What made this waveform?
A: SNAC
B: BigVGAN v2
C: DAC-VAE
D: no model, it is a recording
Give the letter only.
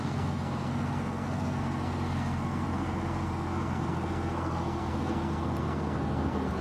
A